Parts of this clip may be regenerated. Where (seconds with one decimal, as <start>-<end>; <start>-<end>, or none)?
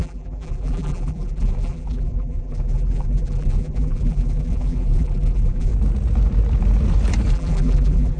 0.0-5.7; 7.3-8.2